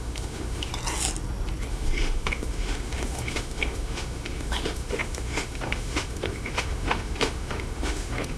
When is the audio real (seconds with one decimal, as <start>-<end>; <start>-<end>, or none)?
0.7-1.7